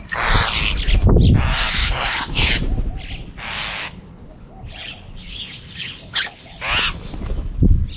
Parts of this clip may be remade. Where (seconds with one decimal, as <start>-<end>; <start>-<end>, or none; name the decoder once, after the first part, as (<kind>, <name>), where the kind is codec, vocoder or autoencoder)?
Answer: 1.8-2.5 (codec, HILCodec); 3.8-6.6